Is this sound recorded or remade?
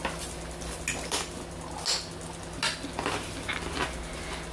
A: recorded